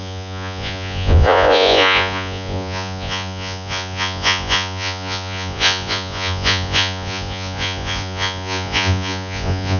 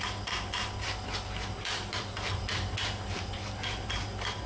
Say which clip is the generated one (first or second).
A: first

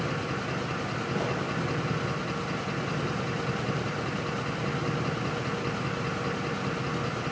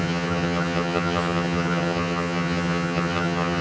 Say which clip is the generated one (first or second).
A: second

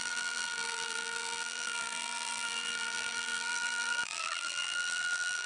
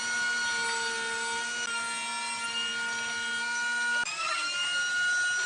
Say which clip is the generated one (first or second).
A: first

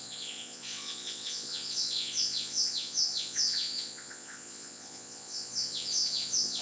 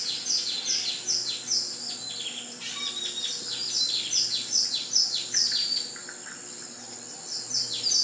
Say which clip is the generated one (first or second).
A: first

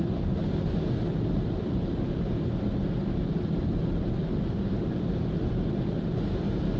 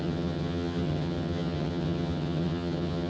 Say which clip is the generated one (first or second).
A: second